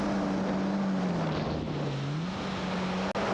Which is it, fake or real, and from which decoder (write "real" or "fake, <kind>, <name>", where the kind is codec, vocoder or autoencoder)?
real